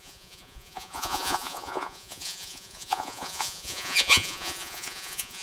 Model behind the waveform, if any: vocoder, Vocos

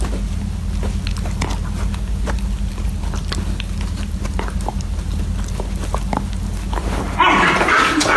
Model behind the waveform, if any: none